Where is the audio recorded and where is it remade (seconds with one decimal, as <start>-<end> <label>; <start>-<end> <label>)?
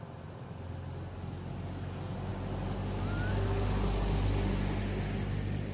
0.0-5.7 recorded